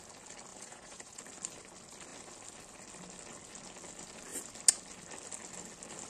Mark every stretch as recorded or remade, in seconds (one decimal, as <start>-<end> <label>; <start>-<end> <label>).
0.0-0.5 recorded; 0.5-1.2 remade; 1.2-6.1 recorded